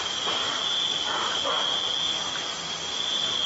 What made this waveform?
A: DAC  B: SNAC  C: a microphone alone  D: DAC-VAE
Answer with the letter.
C